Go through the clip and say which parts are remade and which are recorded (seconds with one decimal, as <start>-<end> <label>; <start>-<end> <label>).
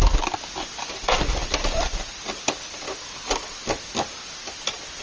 0.0-5.0 recorded